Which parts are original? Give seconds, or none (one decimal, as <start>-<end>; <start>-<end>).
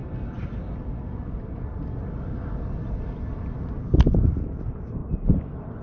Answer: 0.0-5.8